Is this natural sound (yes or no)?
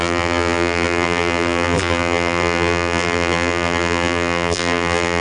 no